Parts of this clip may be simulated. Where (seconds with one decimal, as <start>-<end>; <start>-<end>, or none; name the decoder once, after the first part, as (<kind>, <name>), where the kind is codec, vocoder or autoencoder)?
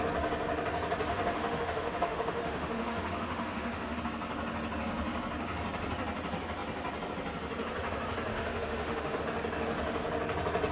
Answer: 1.1-4.0 (autoencoder, DAC-VAE); 8.3-9.2